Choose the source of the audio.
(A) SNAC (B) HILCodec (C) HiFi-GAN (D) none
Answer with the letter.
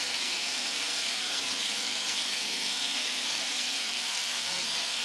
A